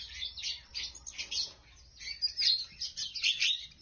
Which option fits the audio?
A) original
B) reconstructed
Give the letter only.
A